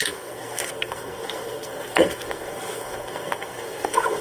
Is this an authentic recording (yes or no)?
no